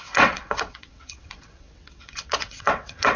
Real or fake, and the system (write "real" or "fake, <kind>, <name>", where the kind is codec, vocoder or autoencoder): fake, vocoder, WaveNeXt